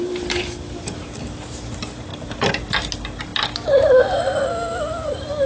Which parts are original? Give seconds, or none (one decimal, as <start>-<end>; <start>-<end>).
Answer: 0.0-5.5